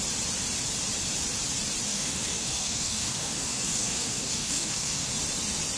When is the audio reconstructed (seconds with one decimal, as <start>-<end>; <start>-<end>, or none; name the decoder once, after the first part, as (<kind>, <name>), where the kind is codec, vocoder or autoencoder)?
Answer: 1.9-5.1 (codec, DAC)